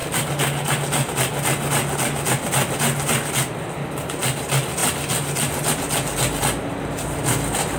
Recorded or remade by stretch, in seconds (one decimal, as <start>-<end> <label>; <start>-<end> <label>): 0.0-7.8 recorded